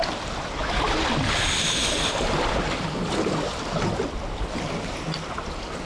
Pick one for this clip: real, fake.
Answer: real